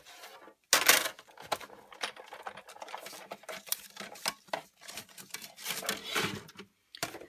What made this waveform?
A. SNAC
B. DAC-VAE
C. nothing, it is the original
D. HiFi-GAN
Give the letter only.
C